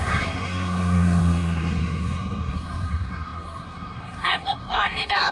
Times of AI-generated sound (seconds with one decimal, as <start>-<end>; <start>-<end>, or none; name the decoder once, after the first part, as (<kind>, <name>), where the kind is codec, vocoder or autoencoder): 0.0-5.3 (codec, SNAC)